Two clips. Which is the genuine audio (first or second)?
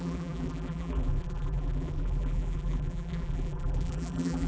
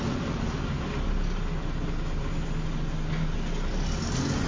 second